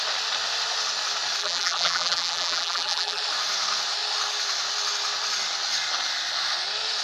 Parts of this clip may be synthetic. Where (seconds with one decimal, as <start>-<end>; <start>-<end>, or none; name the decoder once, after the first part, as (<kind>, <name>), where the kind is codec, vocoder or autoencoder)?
1.4-3.2 (vocoder, BigVGAN v2)